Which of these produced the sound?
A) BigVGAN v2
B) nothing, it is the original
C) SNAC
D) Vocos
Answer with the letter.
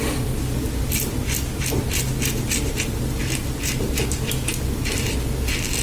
B